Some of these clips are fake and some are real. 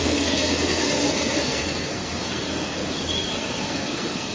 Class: fake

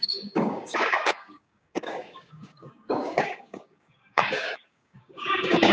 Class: fake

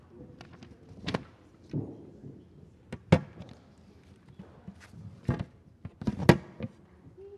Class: real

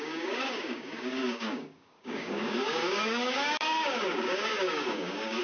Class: fake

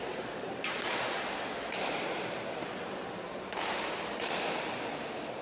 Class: real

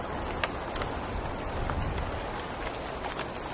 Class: real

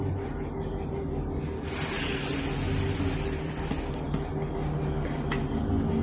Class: real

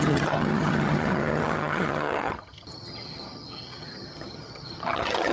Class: fake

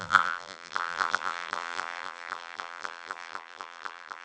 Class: fake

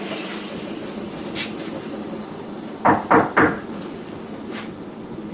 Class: fake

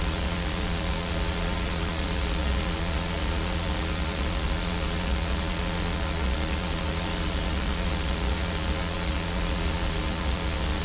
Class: fake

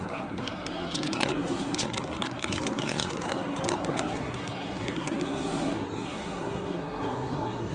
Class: fake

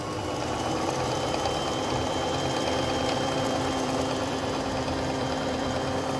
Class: fake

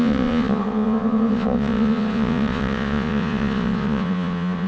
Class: fake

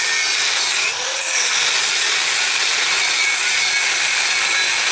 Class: real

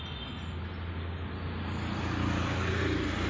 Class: real